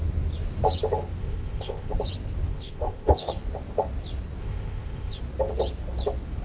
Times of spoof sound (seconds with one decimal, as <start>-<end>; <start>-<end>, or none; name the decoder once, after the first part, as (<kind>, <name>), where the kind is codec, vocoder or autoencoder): 1.2-1.9 (codec, ZipCodec); 2.5-3.3; 4.4-5.2